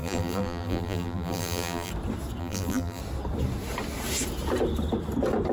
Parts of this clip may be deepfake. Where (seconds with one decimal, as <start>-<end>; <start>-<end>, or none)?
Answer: 0.0-1.9; 2.4-3.0